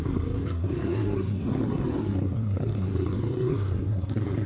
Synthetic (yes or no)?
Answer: yes